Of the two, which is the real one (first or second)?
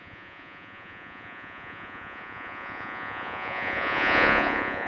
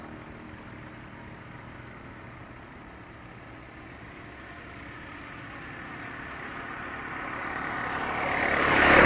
second